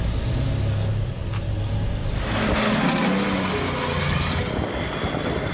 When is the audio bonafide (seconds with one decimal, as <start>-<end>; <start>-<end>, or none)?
0.0-5.5

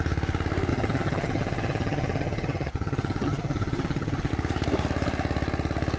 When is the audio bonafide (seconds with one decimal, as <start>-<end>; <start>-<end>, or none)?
0.0-0.7; 4.3-6.0

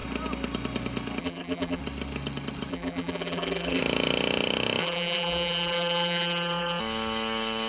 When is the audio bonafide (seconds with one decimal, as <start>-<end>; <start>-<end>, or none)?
0.0-1.2; 1.8-2.7; 3.8-4.8; 6.8-7.7

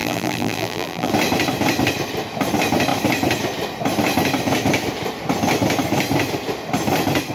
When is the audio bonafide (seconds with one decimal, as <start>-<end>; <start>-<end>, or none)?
1.1-7.3

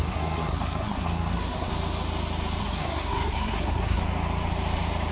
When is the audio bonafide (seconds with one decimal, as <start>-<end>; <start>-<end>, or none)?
1.7-2.6; 4.0-5.1

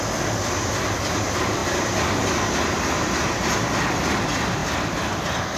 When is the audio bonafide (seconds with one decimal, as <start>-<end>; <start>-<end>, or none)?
0.0-5.6

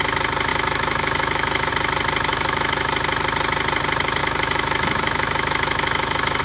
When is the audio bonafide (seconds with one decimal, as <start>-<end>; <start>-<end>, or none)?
0.0-0.5; 1.7-2.3; 2.9-4.2

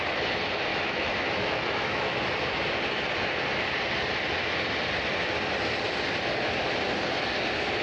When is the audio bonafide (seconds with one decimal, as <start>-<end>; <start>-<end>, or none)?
0.0-0.7; 2.2-7.8